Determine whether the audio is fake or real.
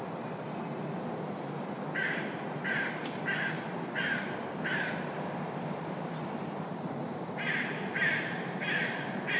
fake